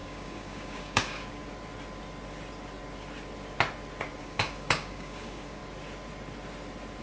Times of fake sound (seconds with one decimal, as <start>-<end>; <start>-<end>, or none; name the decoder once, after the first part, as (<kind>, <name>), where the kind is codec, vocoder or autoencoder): 0.0-1.4 (codec, DAC); 4.2-5.6

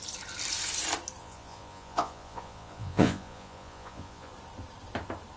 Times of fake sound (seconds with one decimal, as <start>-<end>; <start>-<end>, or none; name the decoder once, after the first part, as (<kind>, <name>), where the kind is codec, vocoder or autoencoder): 1.2-4.3 (vocoder, Vocos)

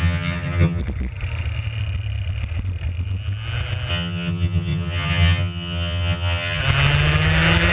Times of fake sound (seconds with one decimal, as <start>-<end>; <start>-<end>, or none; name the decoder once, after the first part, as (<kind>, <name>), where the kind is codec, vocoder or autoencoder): 0.0-0.8 (vocoder, HiFi-GAN); 3.9-6.6